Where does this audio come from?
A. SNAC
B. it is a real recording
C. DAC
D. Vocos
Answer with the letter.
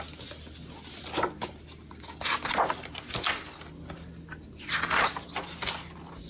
B